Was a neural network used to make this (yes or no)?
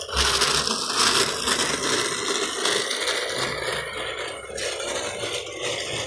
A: no